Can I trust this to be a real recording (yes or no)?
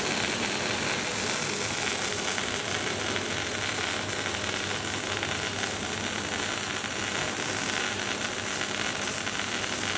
yes